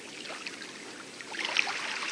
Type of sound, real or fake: real